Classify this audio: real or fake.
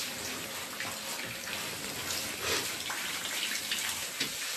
real